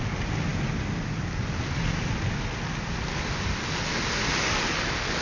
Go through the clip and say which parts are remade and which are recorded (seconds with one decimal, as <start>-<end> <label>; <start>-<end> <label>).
0.0-5.2 recorded